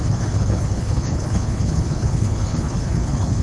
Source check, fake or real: fake